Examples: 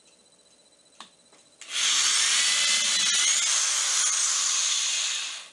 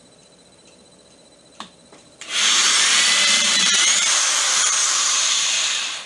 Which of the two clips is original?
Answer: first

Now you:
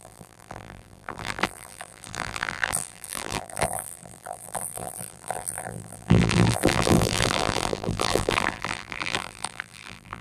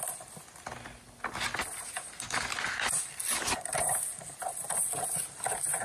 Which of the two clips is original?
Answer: second